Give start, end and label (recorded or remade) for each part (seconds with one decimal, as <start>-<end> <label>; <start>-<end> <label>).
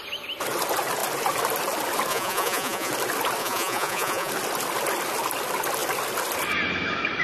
0.0-2.1 recorded; 2.1-2.9 remade; 2.9-3.4 recorded; 3.4-4.3 remade; 4.3-7.2 recorded